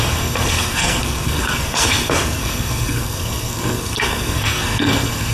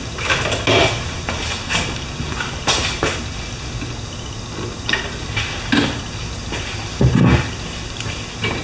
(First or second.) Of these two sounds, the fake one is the first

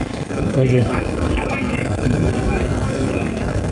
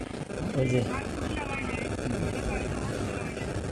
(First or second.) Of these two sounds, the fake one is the first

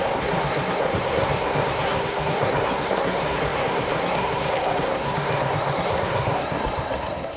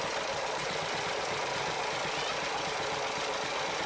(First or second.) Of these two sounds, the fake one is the first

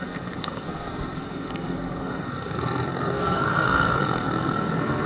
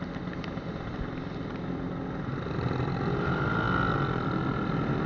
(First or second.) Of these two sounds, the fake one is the first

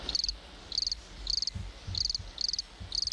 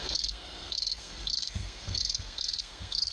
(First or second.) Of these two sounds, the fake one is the second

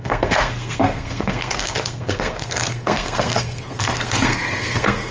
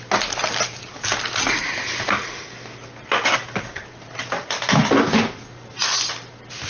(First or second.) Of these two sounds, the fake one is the first